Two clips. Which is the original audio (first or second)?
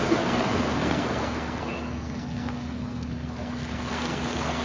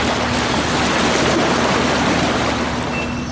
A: second